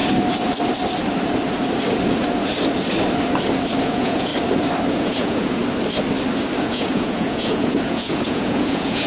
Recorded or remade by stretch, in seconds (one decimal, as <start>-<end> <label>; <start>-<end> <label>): 0.0-3.8 recorded; 3.8-4.3 remade; 4.3-4.9 recorded; 4.9-5.6 remade; 5.6-6.6 recorded; 6.6-9.1 remade